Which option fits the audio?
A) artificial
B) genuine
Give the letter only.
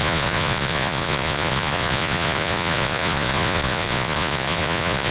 A